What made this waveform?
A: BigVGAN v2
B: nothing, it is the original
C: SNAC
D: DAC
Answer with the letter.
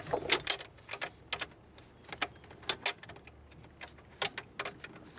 B